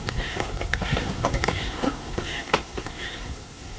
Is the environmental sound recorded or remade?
remade